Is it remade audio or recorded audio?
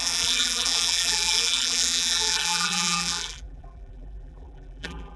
remade